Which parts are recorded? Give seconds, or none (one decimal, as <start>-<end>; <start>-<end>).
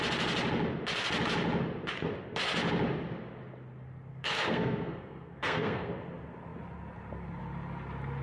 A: 0.0-4.1; 5.9-8.2